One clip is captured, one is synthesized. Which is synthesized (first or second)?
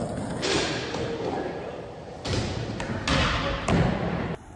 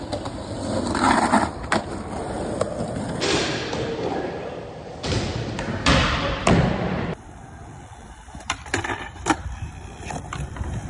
second